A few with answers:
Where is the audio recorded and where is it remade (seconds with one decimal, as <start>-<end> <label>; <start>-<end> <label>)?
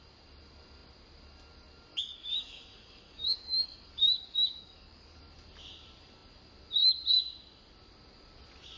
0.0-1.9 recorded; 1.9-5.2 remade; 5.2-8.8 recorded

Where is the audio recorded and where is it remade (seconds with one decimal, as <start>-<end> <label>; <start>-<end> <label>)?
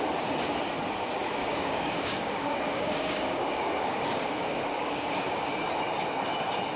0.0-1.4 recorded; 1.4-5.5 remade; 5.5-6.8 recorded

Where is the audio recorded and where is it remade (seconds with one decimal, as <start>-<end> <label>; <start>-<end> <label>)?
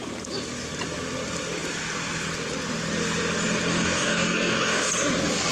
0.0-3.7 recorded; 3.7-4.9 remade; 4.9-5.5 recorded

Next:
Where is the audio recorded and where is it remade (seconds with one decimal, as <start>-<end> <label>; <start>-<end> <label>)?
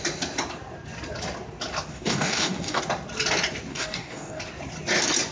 0.0-1.9 recorded; 1.9-2.8 remade; 2.8-3.7 recorded; 3.7-4.4 remade; 4.4-5.3 recorded